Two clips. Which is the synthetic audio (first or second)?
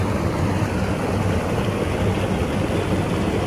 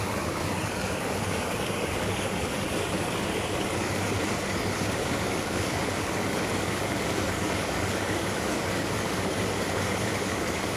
second